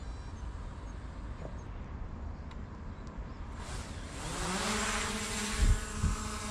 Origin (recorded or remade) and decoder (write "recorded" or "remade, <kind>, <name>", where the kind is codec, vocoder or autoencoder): recorded